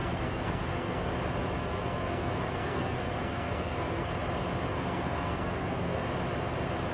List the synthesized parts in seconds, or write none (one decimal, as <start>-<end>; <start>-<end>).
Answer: 0.0-1.1; 1.6-4.1; 4.7-6.0